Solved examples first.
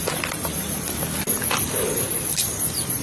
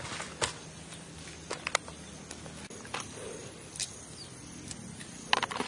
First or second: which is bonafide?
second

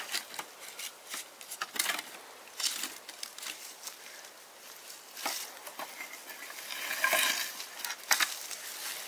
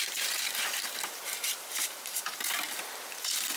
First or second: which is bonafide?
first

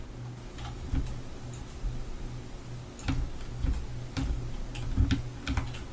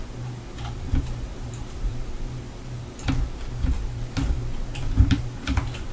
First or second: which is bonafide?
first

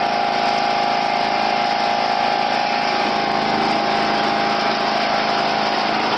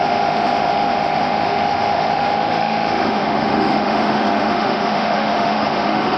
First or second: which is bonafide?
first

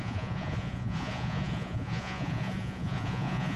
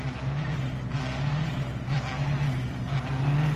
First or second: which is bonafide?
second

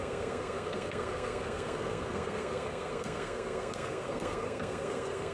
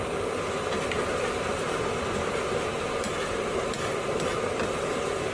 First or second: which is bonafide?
second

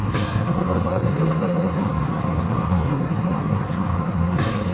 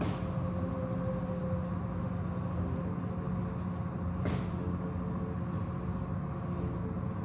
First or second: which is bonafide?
second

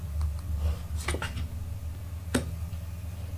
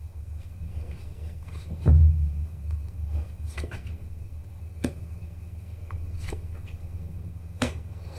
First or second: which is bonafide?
first